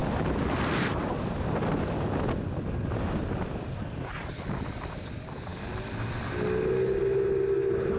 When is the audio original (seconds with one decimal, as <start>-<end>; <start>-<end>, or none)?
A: 0.0-8.0